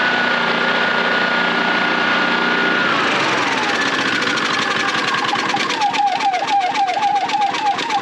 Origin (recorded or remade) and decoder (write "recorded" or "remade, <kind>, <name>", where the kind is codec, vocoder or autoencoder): recorded